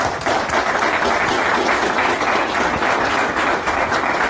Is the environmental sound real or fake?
real